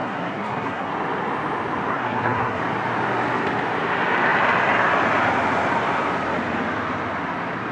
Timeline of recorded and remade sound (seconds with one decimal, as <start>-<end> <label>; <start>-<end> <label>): 0.0-0.9 remade; 0.9-1.9 recorded; 1.9-2.6 remade; 2.6-7.7 recorded